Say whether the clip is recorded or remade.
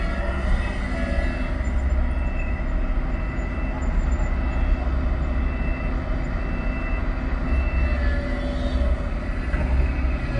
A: recorded